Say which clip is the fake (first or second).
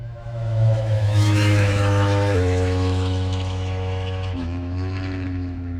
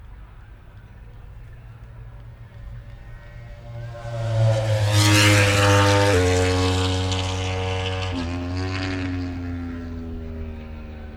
first